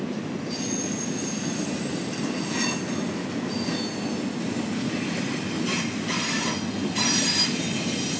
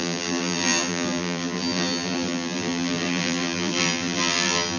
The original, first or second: first